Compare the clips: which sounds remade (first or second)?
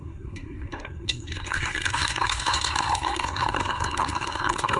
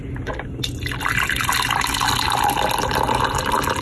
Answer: first